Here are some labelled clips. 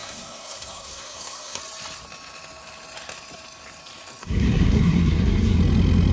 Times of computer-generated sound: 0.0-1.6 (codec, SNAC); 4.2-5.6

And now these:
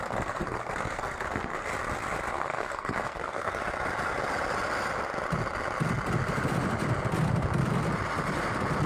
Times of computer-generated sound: 0.0-1.7 (codec, SNAC); 2.3-3.6

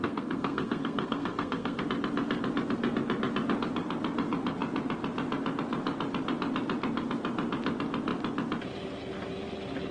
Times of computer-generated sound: 0.0-1.8 (codec, SNAC)

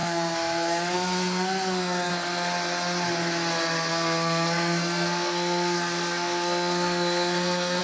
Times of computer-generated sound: 0.0-2.1 (codec, SNAC); 3.9-7.8